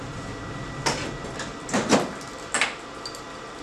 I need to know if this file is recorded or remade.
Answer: recorded